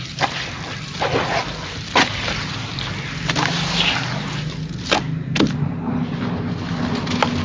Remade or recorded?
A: recorded